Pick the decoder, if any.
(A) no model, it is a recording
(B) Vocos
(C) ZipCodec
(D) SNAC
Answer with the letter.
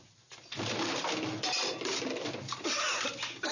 A